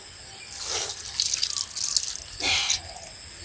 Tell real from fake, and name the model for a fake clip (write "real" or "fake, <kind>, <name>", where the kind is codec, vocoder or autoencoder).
real